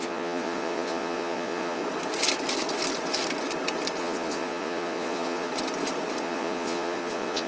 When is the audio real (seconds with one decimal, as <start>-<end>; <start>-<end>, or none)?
1.8-4.0; 5.5-6.2